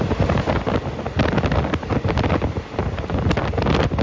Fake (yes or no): no